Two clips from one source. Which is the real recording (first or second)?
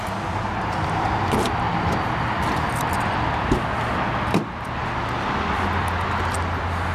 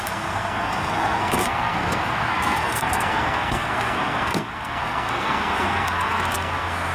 first